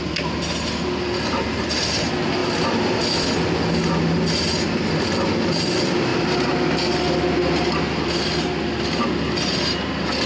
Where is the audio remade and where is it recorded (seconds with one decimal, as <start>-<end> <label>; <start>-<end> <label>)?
0.0-10.3 recorded